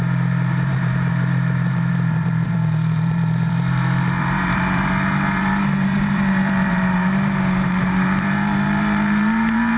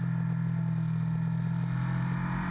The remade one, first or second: first